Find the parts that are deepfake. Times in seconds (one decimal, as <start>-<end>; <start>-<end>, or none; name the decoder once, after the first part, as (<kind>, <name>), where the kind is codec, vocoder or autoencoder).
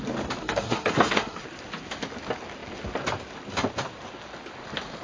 0.4-1.4 (codec, SNAC)